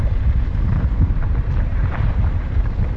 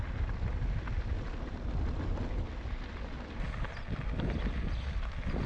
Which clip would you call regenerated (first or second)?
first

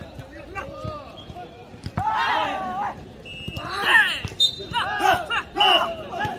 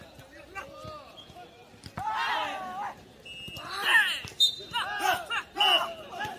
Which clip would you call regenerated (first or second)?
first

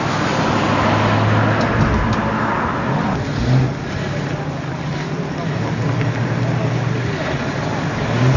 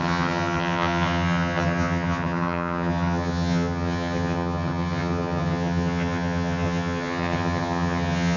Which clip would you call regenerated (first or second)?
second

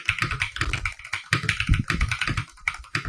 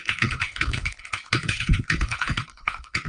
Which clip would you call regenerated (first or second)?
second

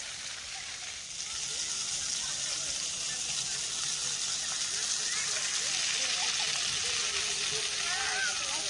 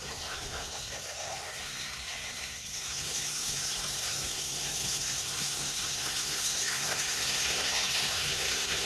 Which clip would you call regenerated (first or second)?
second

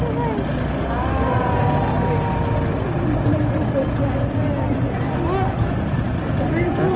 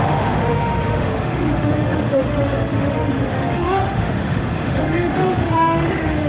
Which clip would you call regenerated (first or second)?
second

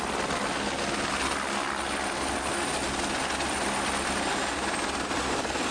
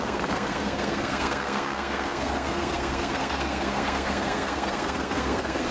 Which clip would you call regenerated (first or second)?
second